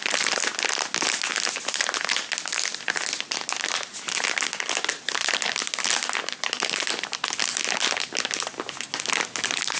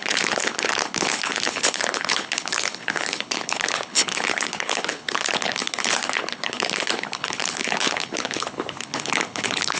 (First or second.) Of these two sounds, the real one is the first